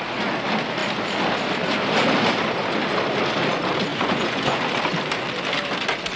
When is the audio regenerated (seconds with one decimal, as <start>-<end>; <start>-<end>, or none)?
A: 3.9-4.6